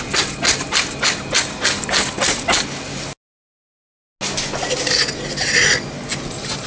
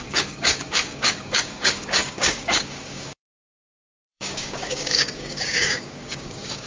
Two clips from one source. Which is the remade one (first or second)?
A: second